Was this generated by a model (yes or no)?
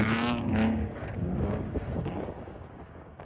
yes